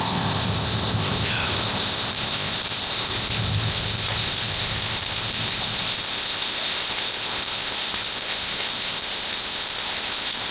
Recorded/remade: remade